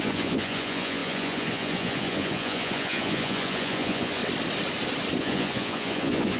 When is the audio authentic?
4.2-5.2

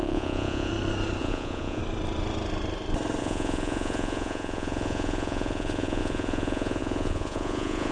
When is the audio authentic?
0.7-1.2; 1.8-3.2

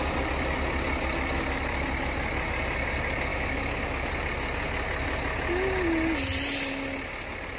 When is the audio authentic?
0.0-3.3; 4.1-7.6